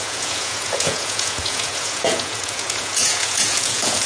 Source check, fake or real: fake